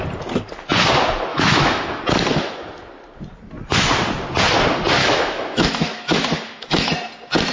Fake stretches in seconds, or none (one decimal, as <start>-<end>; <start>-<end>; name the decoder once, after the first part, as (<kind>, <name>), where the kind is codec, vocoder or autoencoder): 1.3-2.0 (autoencoder, DAC-VAE); 5.0-6.9